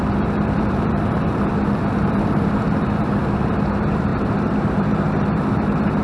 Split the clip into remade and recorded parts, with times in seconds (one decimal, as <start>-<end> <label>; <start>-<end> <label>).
0.0-6.0 remade